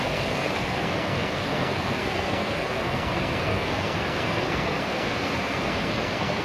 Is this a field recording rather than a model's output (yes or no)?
no